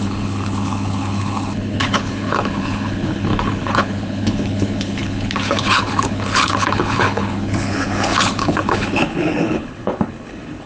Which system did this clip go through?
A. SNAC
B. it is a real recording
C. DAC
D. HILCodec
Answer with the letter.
D